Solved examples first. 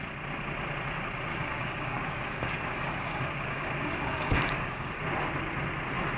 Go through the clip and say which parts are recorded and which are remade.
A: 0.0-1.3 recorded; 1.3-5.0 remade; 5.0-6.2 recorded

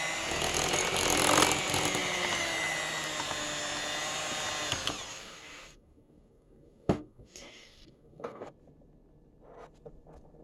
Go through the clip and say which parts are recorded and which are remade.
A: 0.0-5.1 recorded; 5.1-8.5 remade; 8.5-10.4 recorded

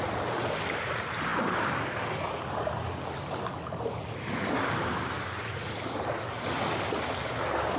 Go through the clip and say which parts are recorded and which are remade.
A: 0.0-7.8 recorded

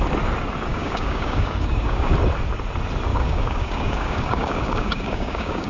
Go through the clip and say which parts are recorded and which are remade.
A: 0.0-0.7 recorded; 0.7-2.1 remade; 2.1-3.1 recorded; 3.1-5.7 remade

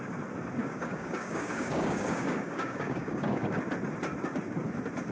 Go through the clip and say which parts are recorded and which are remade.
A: 0.0-0.6 recorded; 0.6-3.6 remade; 3.6-5.1 recorded

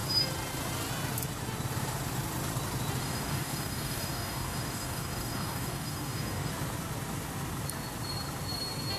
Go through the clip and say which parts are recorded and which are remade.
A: 0.0-3.0 recorded; 3.0-6.5 remade; 6.5-9.0 recorded